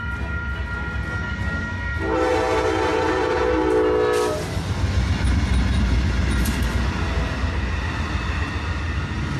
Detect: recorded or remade recorded